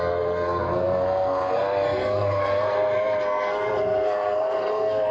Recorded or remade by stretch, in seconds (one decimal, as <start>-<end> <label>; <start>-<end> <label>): 0.0-5.1 remade